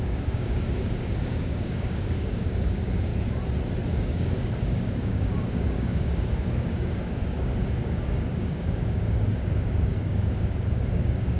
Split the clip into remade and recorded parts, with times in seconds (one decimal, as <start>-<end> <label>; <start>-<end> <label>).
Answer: 0.0-3.1 remade; 3.1-3.9 recorded; 3.9-11.4 remade